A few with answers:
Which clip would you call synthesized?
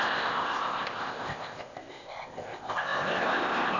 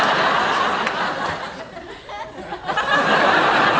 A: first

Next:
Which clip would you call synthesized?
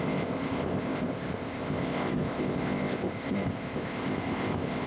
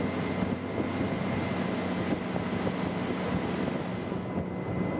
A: first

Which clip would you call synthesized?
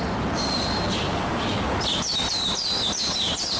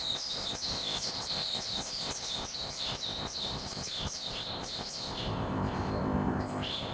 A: second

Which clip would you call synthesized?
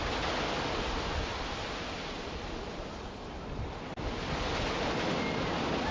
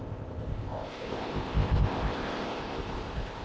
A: second